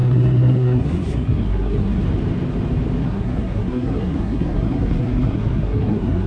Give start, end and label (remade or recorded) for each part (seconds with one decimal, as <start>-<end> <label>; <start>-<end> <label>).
0.0-2.0 remade; 2.0-3.0 recorded; 3.0-6.3 remade